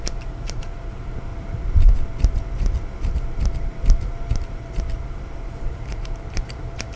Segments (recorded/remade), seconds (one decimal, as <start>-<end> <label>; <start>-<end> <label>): 0.0-1.3 remade; 1.3-3.1 recorded; 3.1-7.0 remade